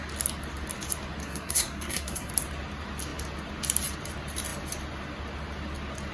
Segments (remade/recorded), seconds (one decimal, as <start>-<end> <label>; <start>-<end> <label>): 0.0-1.2 recorded; 1.2-2.3 remade; 2.3-6.1 recorded